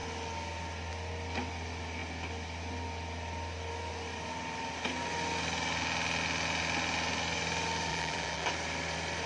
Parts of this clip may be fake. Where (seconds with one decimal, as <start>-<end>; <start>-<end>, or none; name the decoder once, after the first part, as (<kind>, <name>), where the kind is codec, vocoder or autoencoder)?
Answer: 7.9-8.5 (vocoder, BigVGAN v2)